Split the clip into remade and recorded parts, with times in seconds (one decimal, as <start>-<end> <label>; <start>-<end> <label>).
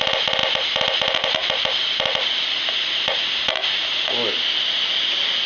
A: 0.0-5.5 recorded